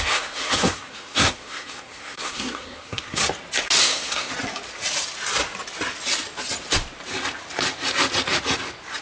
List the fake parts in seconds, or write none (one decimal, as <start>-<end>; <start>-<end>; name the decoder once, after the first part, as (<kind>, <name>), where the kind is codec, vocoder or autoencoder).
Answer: 0.0-3.2 (codec, SNAC); 3.8-4.3